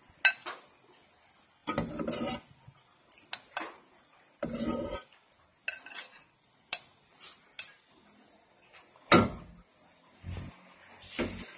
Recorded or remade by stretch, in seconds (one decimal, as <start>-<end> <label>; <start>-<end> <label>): 0.0-11.6 recorded